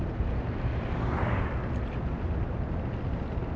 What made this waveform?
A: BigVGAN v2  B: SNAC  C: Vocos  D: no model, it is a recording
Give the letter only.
D